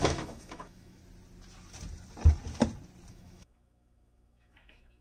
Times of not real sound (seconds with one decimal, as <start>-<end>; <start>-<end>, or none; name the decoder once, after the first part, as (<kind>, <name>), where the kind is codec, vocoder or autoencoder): 0.0-1.0 (autoencoder, DAC-VAE); 3.1-5.0